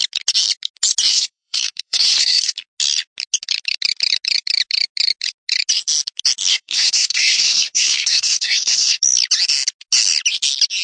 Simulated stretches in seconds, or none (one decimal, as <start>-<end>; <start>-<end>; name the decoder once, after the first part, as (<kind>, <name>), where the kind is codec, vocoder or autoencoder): 1.1-2.5 (codec, SNAC); 6.5-9.0